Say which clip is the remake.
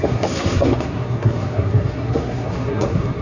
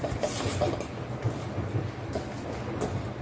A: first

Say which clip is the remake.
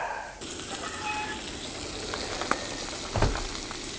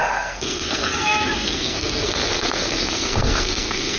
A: second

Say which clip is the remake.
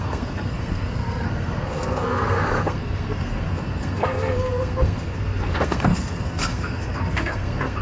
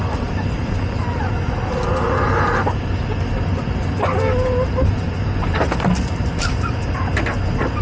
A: first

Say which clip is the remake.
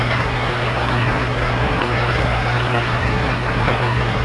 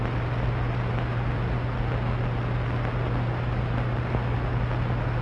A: first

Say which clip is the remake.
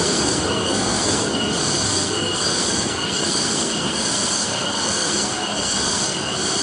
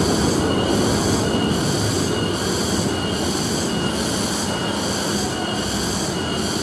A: first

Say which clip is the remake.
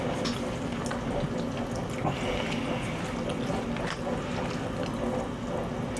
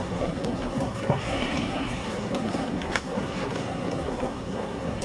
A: second